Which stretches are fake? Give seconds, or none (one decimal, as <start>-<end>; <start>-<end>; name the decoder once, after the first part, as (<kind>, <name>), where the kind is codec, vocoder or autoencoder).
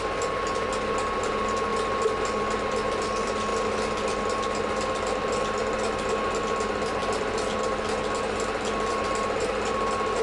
none